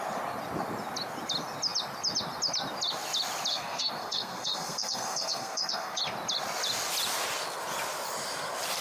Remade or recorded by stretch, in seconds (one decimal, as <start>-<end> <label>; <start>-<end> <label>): 0.0-3.5 recorded; 3.5-6.0 remade; 6.0-8.8 recorded